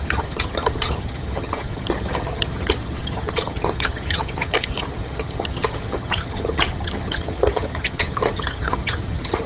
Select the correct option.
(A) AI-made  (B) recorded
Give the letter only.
A